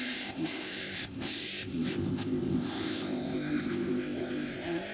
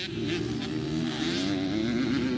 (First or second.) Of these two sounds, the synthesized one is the first